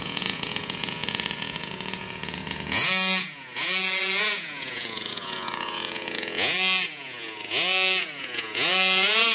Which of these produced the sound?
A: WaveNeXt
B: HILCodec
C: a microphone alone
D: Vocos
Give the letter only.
D